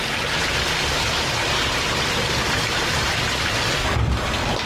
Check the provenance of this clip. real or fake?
real